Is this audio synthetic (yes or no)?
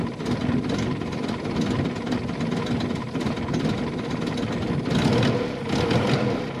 no